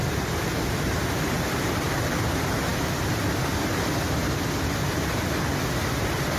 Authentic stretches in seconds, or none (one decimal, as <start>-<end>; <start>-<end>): 2.2-6.4